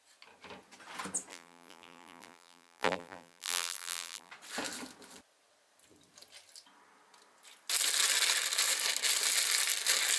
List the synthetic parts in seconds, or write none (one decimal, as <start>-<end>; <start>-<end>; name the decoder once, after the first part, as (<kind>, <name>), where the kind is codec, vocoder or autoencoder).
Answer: 1.3-4.3 (vocoder, BigVGAN v2)